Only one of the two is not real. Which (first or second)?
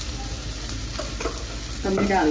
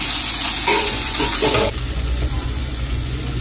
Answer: second